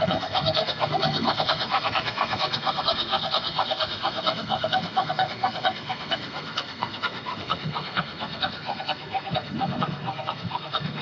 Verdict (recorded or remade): remade